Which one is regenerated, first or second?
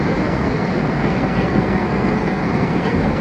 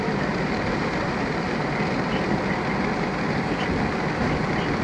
first